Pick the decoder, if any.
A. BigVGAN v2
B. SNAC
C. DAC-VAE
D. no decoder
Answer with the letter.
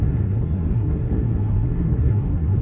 B